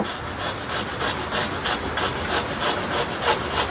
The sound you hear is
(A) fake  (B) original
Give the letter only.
B